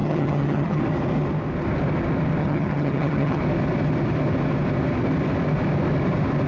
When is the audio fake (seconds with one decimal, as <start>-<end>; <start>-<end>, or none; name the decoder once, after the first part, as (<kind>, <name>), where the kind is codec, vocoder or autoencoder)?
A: 0.0-0.8 (vocoder, HiFi-GAN); 2.4-3.4